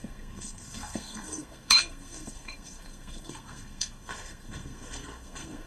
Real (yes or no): no